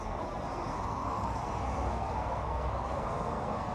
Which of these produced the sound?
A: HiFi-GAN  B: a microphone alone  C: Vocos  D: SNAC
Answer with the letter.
D